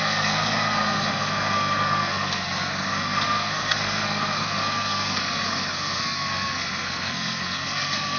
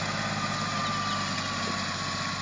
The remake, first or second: first